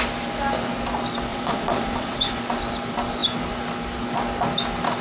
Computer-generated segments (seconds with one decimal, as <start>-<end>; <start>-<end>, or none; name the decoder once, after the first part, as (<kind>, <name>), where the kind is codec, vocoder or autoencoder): 1.3-2.4 (vocoder, WaveNeXt)